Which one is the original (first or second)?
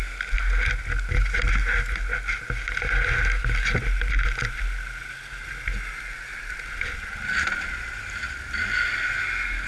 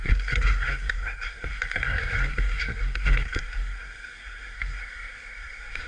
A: first